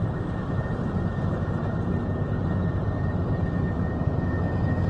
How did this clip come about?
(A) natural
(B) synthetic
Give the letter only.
A